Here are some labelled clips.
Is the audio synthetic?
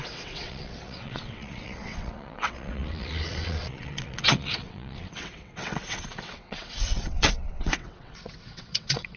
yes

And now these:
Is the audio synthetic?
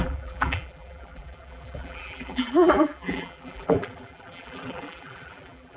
yes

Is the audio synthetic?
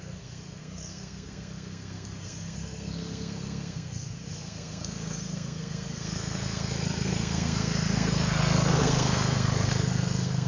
yes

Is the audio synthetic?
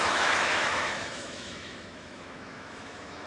yes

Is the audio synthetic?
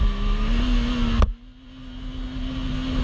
no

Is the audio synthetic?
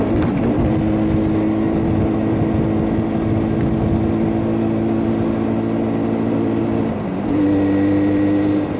no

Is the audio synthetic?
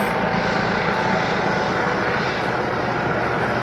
no